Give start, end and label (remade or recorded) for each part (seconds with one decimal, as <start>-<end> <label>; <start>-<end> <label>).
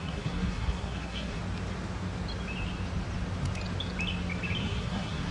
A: 0.0-1.4 remade; 1.4-4.6 recorded; 4.6-5.3 remade